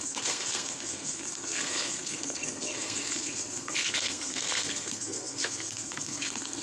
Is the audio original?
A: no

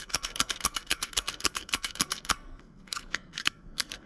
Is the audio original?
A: no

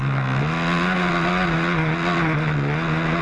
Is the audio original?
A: yes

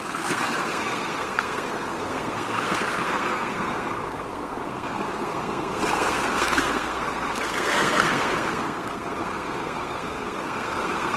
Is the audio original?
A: no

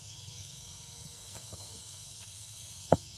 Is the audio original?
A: no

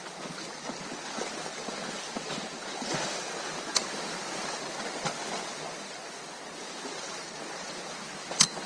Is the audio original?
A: yes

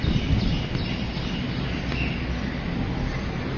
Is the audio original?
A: yes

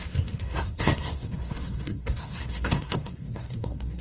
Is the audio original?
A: no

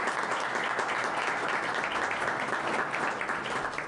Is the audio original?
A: yes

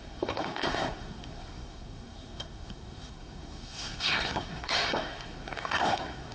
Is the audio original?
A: no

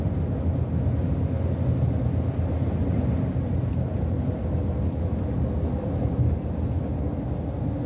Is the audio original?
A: yes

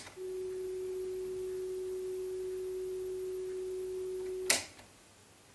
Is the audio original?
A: yes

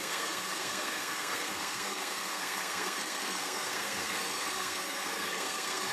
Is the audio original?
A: no